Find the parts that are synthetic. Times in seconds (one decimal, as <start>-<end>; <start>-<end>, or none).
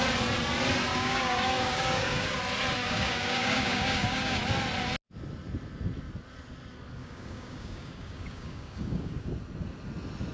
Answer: 0.9-2.4; 2.8-4.4; 7.0-9.3